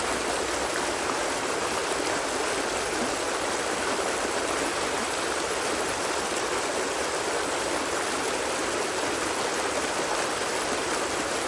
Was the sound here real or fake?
real